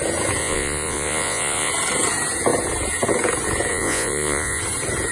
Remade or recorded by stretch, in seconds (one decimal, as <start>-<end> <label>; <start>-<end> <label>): 0.0-0.4 recorded; 0.4-1.7 remade; 1.7-3.7 recorded; 3.7-4.6 remade; 4.6-5.1 recorded